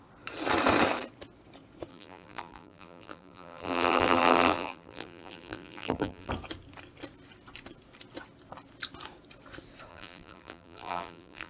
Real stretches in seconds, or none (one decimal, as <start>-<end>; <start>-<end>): 0.0-1.9; 6.3-9.9